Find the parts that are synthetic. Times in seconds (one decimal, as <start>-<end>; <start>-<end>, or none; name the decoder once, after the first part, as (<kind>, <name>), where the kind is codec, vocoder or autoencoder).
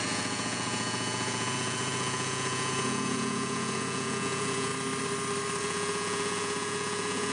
0.0-4.7 (vocoder, Vocos); 5.6-7.3